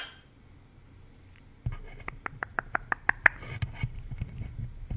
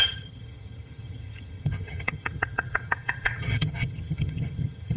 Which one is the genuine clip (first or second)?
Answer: first